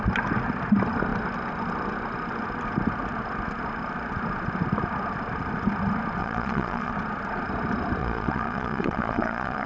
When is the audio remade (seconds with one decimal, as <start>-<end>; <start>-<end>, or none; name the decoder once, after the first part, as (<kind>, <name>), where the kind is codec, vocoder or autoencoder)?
6.2-6.9 (vocoder, Vocos); 8.0-9.7